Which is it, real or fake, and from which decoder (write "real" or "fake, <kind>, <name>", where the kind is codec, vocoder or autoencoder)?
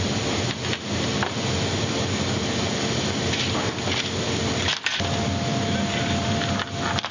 real